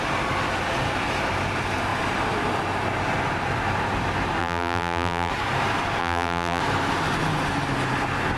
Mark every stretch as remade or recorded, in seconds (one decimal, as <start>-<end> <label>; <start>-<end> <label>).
0.0-4.4 recorded; 4.4-5.3 remade; 5.3-6.0 recorded; 6.0-6.6 remade; 6.6-8.4 recorded

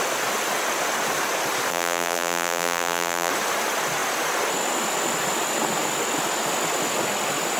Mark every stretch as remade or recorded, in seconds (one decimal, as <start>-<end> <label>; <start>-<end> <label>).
0.0-1.7 recorded; 1.7-3.3 remade; 3.3-7.6 recorded

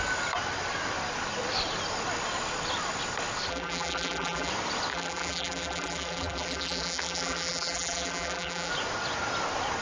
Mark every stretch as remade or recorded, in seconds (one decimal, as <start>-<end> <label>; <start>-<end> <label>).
0.0-3.5 recorded; 3.5-4.5 remade; 4.5-4.9 recorded; 4.9-8.7 remade; 8.7-9.8 recorded

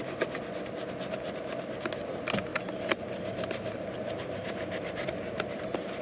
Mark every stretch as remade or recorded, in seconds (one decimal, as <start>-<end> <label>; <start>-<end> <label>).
0.0-2.5 recorded; 2.5-6.0 remade

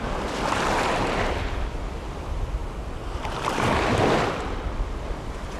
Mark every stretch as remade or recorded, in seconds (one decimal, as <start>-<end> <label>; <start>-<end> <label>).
0.0-5.6 recorded

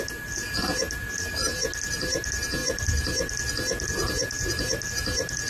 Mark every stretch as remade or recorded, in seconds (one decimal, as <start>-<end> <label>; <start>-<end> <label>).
0.0-5.5 recorded

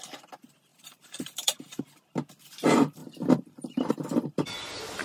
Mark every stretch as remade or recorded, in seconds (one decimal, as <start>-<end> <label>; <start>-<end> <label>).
0.0-0.7 recorded; 0.7-1.8 remade; 1.8-3.0 recorded; 3.0-3.9 remade; 3.9-5.0 recorded